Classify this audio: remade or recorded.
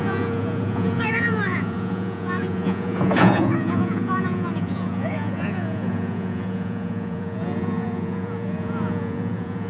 remade